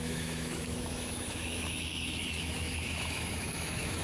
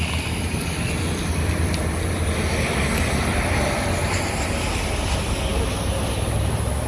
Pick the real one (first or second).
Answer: second